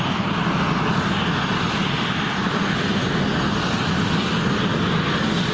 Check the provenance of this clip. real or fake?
real